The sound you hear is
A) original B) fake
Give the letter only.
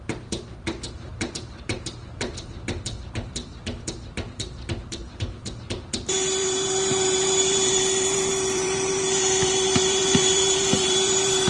B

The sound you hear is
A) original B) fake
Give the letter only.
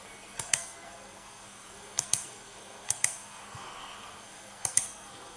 B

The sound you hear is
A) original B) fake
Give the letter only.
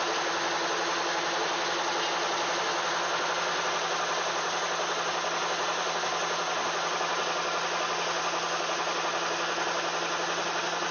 A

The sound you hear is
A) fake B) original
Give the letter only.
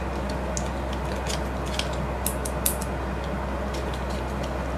B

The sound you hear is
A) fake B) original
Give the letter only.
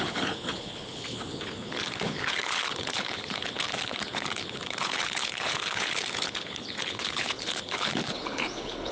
A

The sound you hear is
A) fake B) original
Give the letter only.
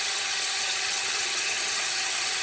A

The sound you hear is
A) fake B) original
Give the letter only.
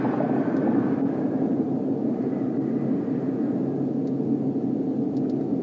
B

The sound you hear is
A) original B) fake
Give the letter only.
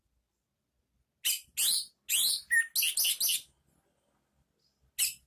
A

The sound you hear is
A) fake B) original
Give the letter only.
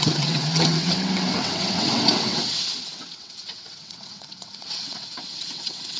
A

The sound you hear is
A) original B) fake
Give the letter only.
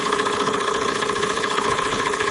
B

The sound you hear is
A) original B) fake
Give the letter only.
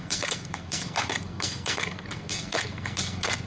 B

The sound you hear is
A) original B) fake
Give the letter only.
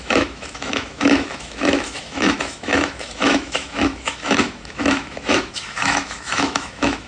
B